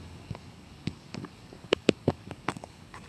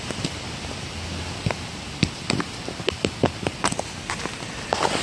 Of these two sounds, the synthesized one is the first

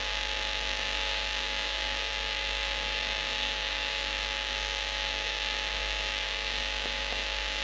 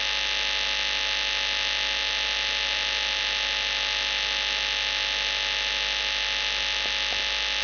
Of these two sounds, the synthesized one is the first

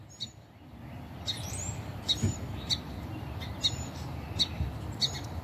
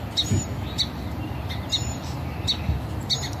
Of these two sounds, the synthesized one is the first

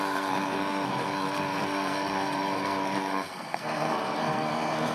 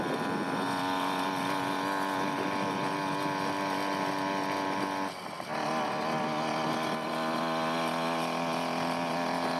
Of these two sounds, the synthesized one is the first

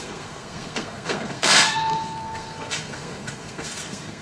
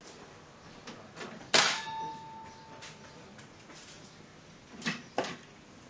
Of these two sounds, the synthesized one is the first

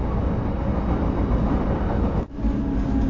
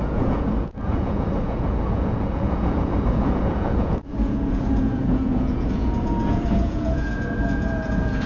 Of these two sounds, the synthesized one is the second